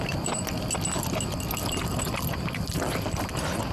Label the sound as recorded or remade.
recorded